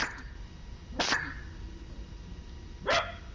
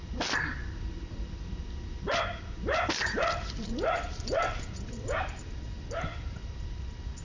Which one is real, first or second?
first